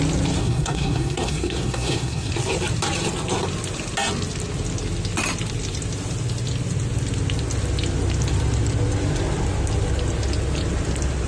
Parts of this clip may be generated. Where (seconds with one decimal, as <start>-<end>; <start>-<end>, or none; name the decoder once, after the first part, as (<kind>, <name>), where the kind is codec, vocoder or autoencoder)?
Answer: 0.4-2.3 (codec, SNAC)